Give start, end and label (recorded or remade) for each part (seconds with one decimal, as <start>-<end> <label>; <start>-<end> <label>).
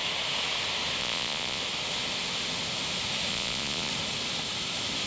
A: 0.0-1.0 recorded; 1.0-1.6 remade; 1.6-3.3 recorded; 3.3-3.9 remade; 3.9-5.1 recorded